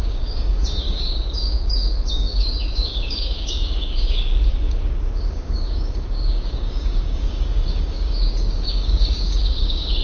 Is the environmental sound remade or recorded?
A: remade